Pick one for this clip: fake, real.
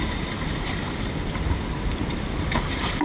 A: real